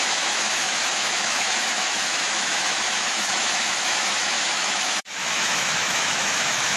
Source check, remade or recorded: remade